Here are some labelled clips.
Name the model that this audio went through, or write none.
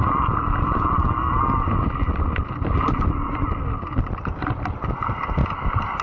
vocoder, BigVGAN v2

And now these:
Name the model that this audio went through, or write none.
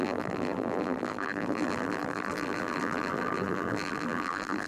vocoder, BigVGAN v2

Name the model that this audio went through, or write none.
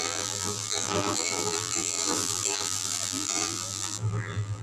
vocoder, BigVGAN v2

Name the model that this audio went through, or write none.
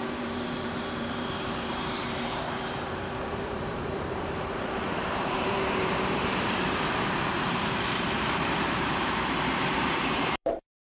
vocoder, BigVGAN v2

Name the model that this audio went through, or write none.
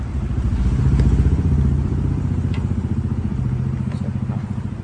vocoder, BigVGAN v2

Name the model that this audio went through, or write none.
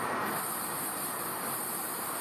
none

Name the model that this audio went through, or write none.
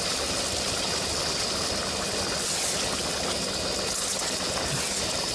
none